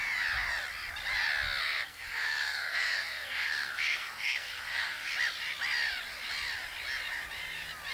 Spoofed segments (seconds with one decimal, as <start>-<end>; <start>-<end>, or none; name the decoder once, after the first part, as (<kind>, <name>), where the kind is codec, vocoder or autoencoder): 1.6-5.1 (codec, SNAC)